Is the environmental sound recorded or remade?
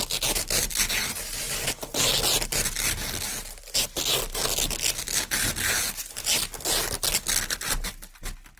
recorded